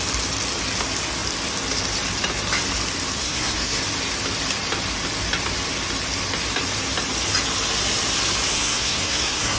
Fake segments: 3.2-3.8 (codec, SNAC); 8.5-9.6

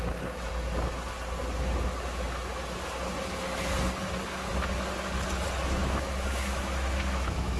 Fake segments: 5.8-7.6 (autoencoder, DAC-VAE)

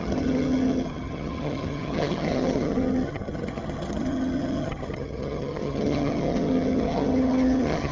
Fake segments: 0.0-7.9 (vocoder, HiFi-GAN)

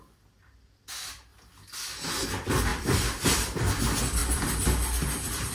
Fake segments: 0.0-1.3 (vocoder, BigVGAN v2); 2.1-5.5

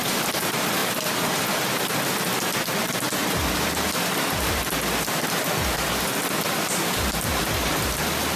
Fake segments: 3.2-7.4 (vocoder, BigVGAN v2)

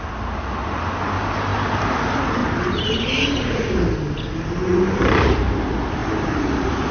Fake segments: 1.5-2.0 (vocoder, BigVGAN v2); 2.4-3.6; 4.6-5.6; 6.0-6.9

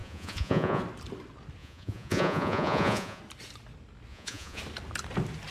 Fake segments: 0.0-0.8 (vocoder, Vocos); 1.6-3.2; 4.1-4.6

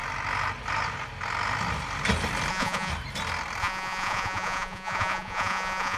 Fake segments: 2.5-2.9 (vocoder, Vocos); 3.6-6.0